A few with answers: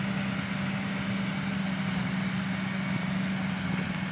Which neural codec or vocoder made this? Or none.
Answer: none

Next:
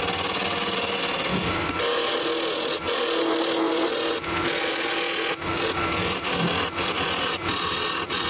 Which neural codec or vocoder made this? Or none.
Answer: none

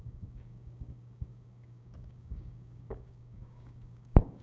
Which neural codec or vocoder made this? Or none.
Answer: codec, DAC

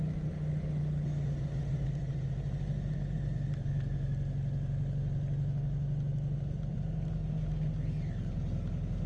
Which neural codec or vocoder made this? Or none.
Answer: none